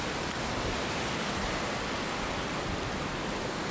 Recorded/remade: recorded